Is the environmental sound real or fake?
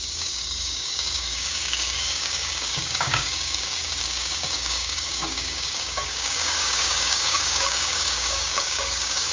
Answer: fake